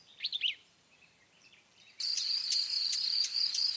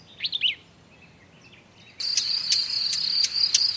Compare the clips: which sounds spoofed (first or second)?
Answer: first